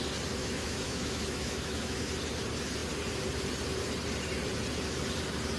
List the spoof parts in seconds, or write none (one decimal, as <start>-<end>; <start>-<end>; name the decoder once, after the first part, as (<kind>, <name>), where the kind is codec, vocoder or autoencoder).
0.4-2.1 (autoencoder, DAC-VAE)